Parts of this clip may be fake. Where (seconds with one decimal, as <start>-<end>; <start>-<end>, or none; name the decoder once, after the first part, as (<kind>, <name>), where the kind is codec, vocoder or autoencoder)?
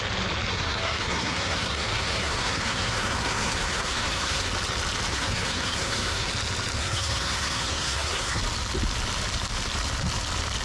0.5-4.5 (codec, SNAC); 5.1-6.3; 6.8-8.4